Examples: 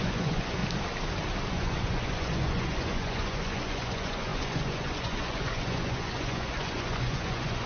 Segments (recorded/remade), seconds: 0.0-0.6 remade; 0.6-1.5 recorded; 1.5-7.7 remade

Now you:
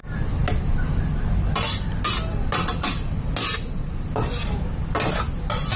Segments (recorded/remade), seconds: 0.0-5.8 recorded

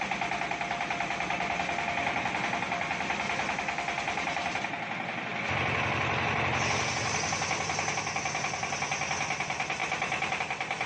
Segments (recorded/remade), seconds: 0.0-10.9 recorded

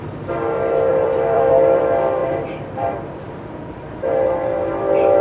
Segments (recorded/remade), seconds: 0.0-0.9 recorded; 0.9-1.8 remade; 1.8-2.2 recorded; 2.2-4.1 remade; 4.1-5.2 recorded

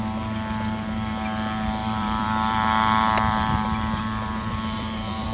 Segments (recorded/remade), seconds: 0.0-1.8 recorded; 1.8-5.3 remade